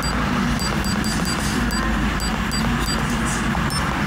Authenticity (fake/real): real